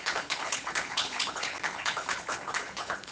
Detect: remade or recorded remade